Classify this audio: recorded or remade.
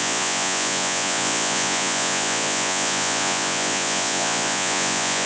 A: remade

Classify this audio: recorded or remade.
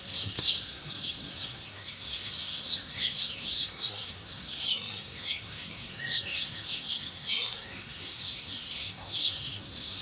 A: remade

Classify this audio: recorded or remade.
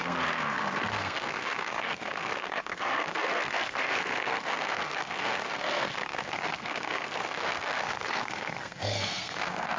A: remade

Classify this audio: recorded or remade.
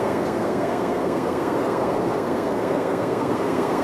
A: remade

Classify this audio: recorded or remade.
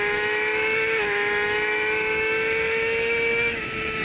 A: remade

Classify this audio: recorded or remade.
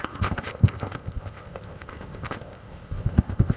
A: remade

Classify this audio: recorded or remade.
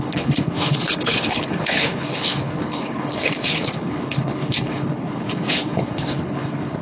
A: remade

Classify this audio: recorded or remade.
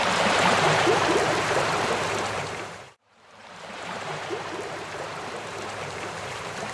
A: remade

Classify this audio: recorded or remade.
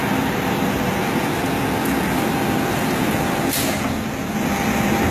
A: recorded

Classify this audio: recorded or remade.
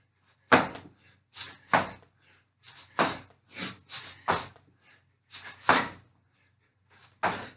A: recorded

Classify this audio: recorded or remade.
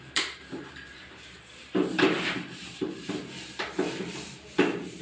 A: remade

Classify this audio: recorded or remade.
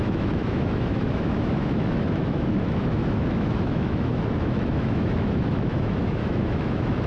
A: remade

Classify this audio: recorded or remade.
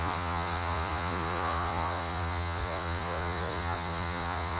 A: remade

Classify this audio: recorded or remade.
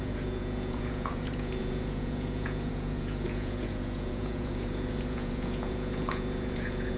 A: remade